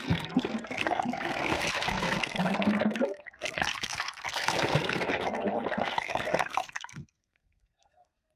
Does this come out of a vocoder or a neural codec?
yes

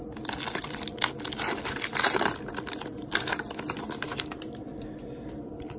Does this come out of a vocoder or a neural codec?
yes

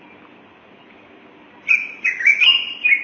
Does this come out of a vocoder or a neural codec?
no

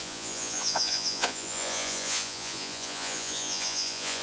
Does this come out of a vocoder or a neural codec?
yes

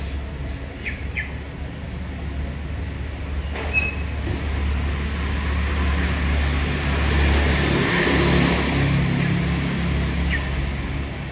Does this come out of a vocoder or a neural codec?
no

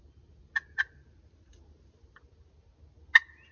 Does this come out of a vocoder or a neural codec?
no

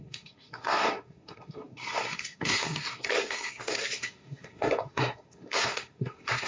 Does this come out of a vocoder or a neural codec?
yes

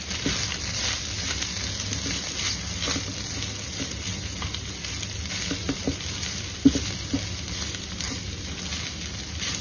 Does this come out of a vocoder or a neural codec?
no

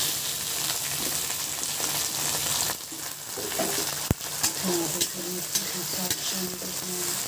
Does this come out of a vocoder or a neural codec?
no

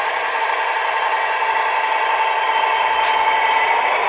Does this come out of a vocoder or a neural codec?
yes